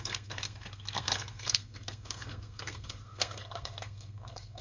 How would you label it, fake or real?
fake